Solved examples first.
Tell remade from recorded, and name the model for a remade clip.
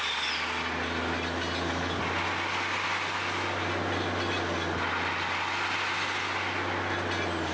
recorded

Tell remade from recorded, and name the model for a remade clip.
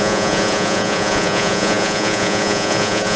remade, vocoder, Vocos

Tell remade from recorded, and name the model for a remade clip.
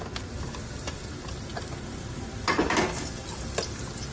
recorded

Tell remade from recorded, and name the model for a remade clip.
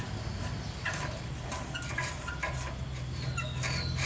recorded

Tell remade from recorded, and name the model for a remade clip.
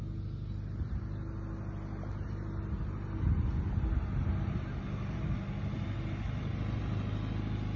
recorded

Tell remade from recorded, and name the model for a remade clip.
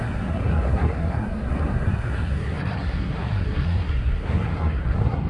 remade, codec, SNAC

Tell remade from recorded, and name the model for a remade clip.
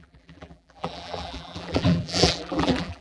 remade, vocoder, BigVGAN v2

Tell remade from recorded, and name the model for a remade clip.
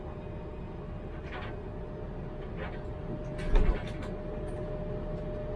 recorded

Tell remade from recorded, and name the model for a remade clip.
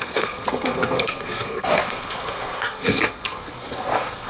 remade, codec, SNAC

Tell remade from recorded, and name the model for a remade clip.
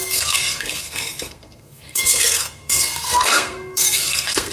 remade, codec, SNAC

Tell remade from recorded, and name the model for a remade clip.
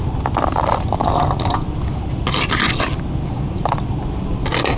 recorded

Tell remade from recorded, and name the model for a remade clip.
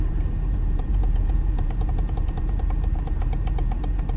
remade, vocoder, BigVGAN v2